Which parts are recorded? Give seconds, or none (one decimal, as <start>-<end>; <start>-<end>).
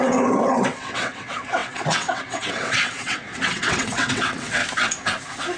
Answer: 4.6-5.6